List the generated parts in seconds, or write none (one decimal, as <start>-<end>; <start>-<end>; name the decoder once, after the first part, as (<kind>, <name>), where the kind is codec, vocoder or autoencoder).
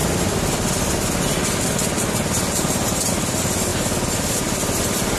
none